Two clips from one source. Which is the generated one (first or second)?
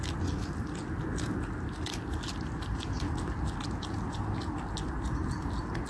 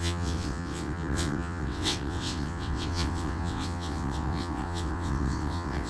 second